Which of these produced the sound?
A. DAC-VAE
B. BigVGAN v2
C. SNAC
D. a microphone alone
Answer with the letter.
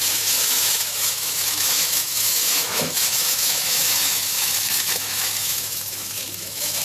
A